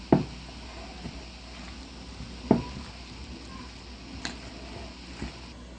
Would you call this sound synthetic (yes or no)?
no